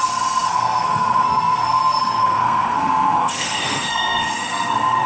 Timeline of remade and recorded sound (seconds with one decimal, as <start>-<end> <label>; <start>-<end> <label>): 0.0-5.1 remade